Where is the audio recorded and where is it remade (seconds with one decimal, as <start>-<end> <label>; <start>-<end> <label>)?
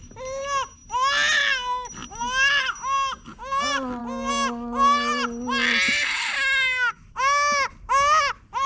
0.0-8.7 recorded